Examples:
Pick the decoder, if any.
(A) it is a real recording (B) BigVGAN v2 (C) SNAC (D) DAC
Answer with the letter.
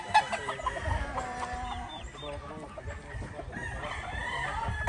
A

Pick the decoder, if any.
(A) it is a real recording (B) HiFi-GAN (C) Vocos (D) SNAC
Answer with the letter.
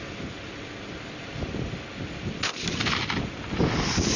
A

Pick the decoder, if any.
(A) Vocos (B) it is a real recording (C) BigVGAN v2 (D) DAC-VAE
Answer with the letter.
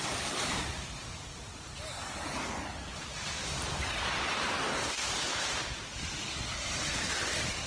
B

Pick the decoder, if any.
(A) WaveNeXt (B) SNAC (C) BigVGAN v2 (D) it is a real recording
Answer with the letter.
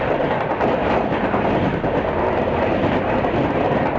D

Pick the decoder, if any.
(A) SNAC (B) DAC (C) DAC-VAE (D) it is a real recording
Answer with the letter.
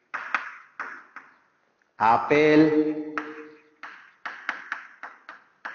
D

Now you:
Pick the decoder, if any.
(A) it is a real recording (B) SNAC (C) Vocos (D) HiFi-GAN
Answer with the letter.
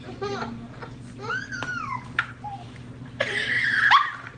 A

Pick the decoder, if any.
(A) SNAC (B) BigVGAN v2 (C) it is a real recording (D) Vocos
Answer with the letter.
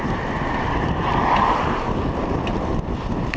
C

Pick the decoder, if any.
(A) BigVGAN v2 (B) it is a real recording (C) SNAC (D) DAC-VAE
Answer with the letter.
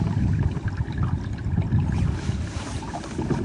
B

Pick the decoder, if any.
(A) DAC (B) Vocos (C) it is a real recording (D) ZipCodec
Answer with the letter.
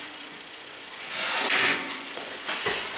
B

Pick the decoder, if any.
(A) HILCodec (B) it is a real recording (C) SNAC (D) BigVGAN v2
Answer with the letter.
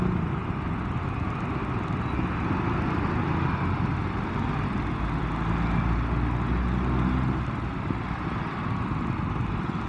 B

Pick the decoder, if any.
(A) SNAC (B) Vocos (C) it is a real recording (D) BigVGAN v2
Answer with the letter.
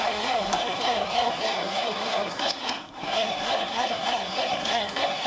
A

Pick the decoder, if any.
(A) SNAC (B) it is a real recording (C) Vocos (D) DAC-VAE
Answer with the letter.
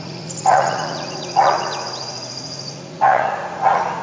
C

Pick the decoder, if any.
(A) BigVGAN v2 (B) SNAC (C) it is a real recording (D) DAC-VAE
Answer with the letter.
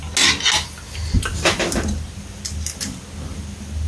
C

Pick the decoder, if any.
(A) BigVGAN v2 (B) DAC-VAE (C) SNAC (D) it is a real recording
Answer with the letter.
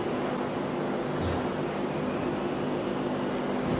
D